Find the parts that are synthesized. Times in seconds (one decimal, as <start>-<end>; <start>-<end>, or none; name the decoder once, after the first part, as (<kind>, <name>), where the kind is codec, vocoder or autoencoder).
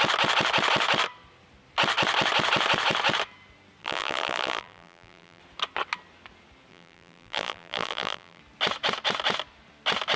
3.8-5.4 (vocoder, BigVGAN v2); 6.7-8.4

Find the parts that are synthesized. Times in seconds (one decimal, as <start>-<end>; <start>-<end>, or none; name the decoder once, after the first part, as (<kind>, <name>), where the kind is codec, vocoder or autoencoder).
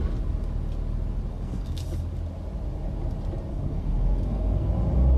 1.3-1.8 (codec, SNAC); 3.5-4.7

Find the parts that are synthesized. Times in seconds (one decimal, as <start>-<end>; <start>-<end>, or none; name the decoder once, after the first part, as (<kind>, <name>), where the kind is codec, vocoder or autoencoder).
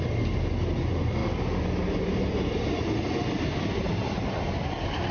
none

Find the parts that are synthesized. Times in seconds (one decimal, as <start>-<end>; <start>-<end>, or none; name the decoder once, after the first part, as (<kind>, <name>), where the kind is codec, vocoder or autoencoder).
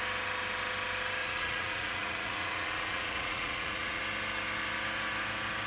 1.2-4.0 (vocoder, Vocos)